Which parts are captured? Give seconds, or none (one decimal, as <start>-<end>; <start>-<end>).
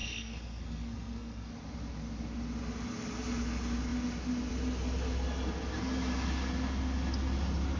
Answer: 1.5-7.8